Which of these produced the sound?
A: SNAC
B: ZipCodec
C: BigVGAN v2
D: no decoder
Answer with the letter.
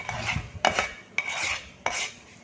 D